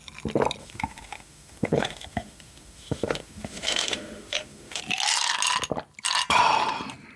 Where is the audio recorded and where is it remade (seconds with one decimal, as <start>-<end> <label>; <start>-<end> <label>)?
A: 0.0-0.6 recorded; 0.6-4.8 remade; 4.8-7.2 recorded